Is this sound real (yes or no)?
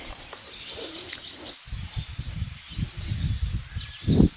yes